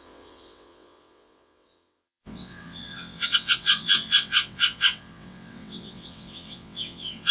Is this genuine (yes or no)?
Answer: no